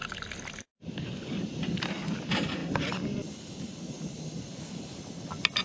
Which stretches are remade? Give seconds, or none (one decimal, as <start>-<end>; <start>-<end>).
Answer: none